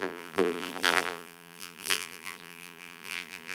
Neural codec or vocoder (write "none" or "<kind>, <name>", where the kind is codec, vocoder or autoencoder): vocoder, BigVGAN v2